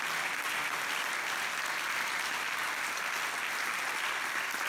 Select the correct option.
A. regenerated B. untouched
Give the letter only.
B